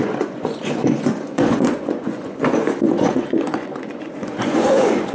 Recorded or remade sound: remade